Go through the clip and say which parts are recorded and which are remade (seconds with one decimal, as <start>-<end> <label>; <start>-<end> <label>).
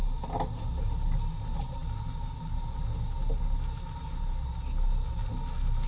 0.0-5.9 recorded